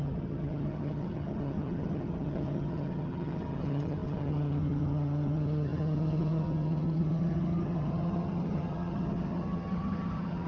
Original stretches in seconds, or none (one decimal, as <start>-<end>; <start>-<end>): none